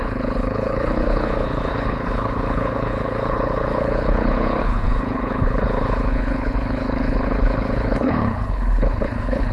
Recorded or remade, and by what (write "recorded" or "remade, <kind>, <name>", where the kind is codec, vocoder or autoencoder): remade, codec, HILCodec